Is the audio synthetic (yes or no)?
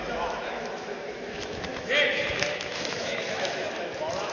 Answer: yes